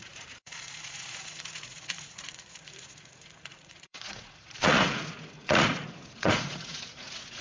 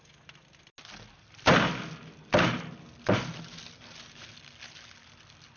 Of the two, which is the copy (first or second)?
first